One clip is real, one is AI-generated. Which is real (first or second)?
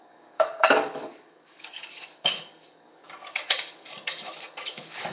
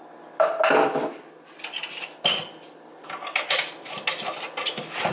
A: second